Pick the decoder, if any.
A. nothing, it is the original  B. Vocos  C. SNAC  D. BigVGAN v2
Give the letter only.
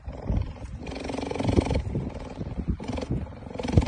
D